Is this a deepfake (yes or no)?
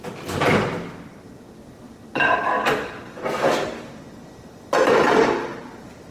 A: no